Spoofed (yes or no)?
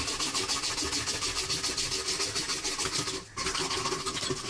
no